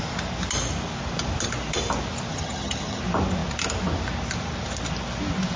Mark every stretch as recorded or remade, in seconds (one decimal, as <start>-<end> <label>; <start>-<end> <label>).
0.0-2.3 recorded; 2.3-3.0 remade; 3.0-5.6 recorded